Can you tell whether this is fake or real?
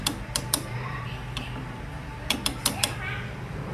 fake